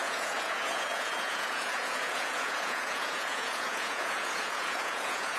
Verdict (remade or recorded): remade